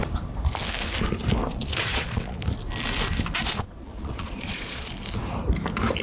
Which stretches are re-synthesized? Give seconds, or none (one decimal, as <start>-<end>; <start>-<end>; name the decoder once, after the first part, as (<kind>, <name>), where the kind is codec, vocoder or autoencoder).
1.5-2.4 (vocoder, Vocos); 3.4-4.9